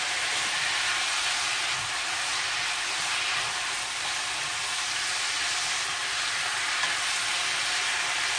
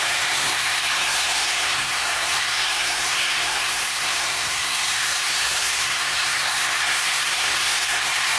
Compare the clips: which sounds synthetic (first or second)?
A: second